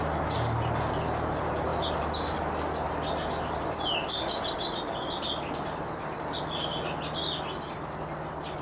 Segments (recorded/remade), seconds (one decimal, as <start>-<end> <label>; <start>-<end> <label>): 0.0-8.6 recorded